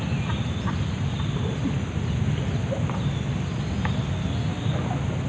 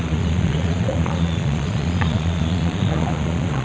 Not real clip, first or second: second